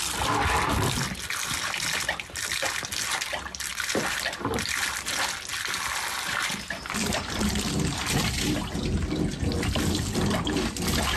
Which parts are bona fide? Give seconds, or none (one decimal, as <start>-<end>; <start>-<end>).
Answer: 0.0-11.2